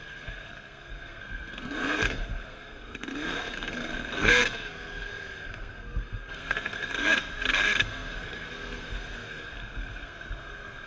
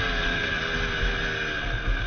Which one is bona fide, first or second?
second